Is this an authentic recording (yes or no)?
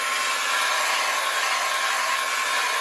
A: yes